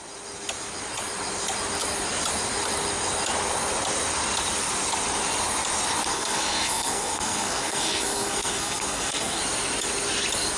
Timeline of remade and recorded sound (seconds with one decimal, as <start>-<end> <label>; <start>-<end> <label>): 0.0-6.1 recorded; 6.1-9.4 remade; 9.4-10.6 recorded